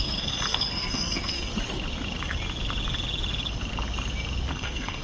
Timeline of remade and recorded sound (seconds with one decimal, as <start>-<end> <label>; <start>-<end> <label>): 0.0-1.5 remade; 1.5-4.5 recorded; 4.5-5.0 remade

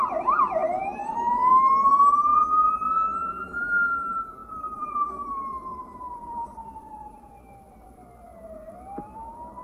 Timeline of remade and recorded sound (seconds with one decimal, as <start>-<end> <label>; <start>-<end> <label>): 0.0-2.3 recorded; 2.3-3.6 remade; 3.6-4.4 recorded; 4.4-7.3 remade; 7.3-9.6 recorded

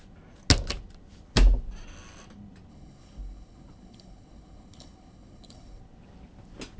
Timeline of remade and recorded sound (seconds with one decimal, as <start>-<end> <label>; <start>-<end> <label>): 0.0-2.7 recorded; 2.7-5.8 remade; 5.8-6.8 recorded

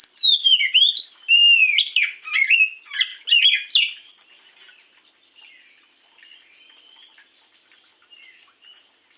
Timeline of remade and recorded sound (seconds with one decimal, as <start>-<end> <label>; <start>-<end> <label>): 0.0-1.0 remade; 1.0-1.6 recorded; 1.6-2.5 remade; 2.5-9.2 recorded

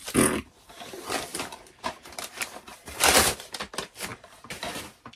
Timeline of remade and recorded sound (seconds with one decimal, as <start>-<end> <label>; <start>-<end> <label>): 0.0-1.3 recorded; 1.3-3.5 remade; 3.5-4.1 recorded; 4.1-4.8 remade; 4.8-5.2 recorded